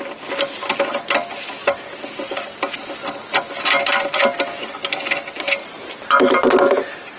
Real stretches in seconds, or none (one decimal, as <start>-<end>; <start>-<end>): 0.0-7.2